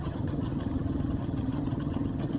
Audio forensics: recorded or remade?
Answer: remade